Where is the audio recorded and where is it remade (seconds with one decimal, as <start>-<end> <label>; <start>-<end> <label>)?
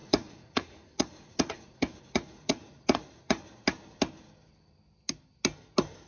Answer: 0.0-3.4 remade; 3.4-6.1 recorded